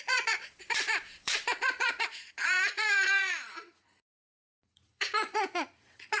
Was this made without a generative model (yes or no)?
no